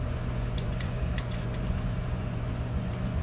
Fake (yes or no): yes